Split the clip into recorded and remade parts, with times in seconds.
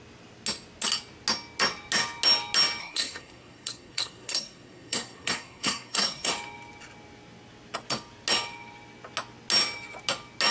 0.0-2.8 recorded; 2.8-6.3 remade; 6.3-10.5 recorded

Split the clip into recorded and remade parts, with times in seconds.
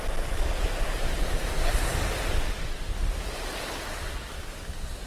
0.0-5.1 recorded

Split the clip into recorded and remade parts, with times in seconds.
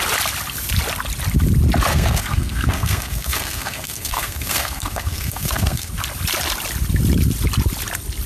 0.0-1.9 recorded; 1.9-5.9 remade; 5.9-8.3 recorded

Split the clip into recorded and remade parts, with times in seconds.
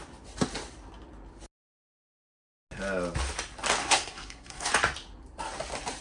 0.0-3.8 recorded; 3.8-4.7 remade; 4.7-6.0 recorded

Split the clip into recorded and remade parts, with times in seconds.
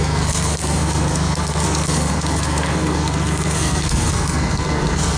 0.0-5.2 remade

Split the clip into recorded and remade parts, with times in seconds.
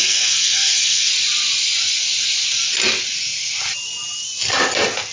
0.0-1.1 remade; 1.1-5.1 recorded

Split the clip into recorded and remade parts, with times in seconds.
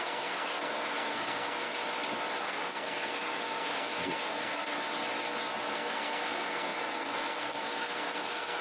0.0-1.8 remade; 1.8-2.4 recorded; 2.4-4.7 remade; 4.7-5.6 recorded; 5.6-8.6 remade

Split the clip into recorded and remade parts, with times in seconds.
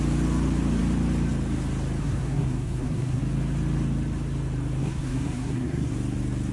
0.0-2.0 recorded; 2.0-3.2 remade; 3.2-4.8 recorded; 4.8-5.9 remade; 5.9-6.5 recorded